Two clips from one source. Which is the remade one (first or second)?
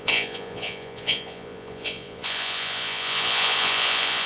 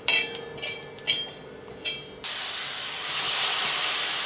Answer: first